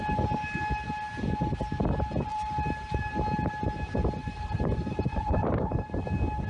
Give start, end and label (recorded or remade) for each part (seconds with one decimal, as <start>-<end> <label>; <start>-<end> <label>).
0.0-2.3 recorded; 2.3-3.0 remade; 3.0-4.2 recorded; 4.2-6.0 remade; 6.0-6.5 recorded